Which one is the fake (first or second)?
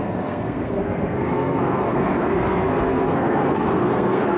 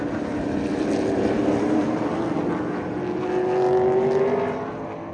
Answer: first